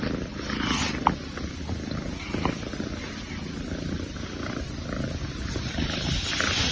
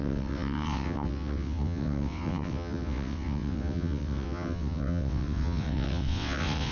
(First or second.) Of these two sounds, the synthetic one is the second